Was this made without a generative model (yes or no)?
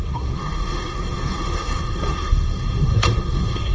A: no